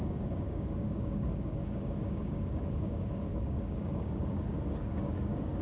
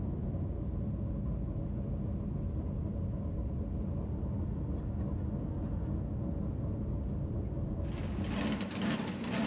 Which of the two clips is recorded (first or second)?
second